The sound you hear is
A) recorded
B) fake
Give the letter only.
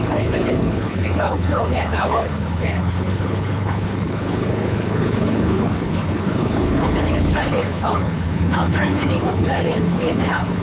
B